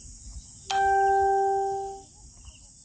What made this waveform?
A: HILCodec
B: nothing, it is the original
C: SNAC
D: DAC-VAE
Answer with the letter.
B